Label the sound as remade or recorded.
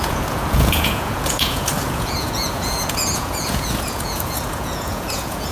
remade